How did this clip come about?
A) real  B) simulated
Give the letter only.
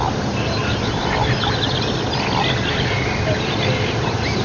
A